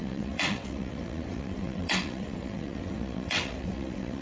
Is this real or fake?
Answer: fake